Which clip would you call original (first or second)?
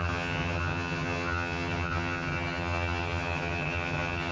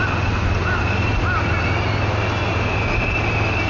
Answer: second